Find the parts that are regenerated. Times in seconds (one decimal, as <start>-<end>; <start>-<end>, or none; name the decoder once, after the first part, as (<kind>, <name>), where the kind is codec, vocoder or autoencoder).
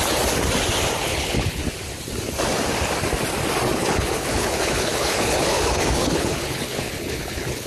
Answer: 1.0-1.6 (codec, HILCodec); 3.8-7.7